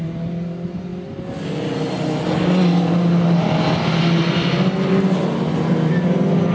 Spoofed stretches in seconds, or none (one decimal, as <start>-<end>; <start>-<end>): none